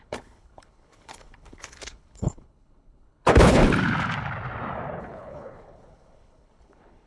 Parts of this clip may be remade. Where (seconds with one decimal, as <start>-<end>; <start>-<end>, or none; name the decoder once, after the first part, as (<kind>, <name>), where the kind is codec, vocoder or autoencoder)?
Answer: 0.0-3.6 (codec, HILCodec); 5.0-7.1